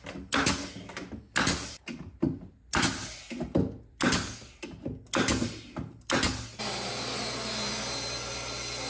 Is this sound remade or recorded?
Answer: recorded